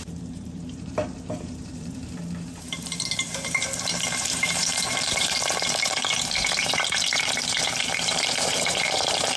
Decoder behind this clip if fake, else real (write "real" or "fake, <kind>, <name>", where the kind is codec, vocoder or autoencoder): fake, vocoder, BigVGAN v2